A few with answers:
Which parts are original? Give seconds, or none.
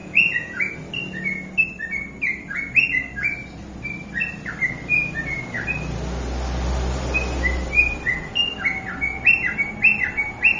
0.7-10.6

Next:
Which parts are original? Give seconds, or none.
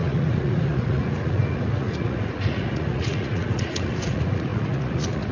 none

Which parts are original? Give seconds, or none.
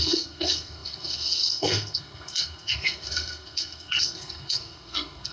none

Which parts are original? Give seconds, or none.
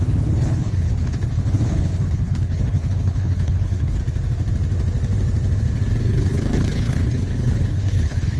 4.0-6.0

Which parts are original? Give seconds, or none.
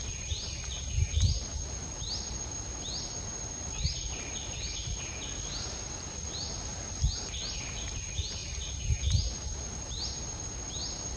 0.0-11.2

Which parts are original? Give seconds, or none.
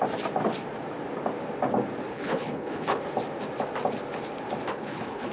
0.0-2.1; 3.0-4.7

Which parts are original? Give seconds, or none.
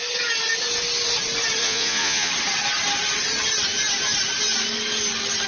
0.0-1.6; 2.3-5.5